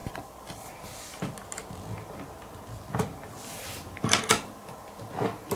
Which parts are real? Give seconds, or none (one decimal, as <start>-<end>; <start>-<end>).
0.0-5.6